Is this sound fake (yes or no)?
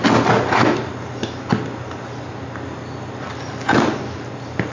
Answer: no